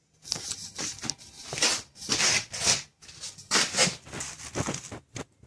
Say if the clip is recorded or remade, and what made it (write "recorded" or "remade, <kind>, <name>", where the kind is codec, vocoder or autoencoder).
recorded